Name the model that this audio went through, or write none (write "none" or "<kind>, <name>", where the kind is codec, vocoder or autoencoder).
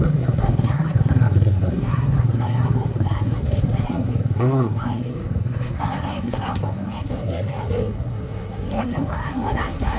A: codec, SNAC